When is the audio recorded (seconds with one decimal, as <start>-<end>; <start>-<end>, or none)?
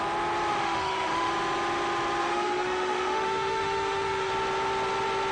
0.0-0.5; 1.3-2.2; 4.3-5.3